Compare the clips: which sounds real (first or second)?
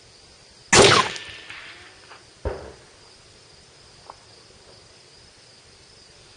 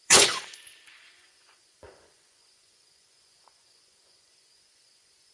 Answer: first